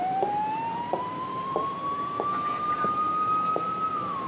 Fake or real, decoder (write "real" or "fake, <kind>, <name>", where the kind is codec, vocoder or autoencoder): fake, vocoder, BigVGAN v2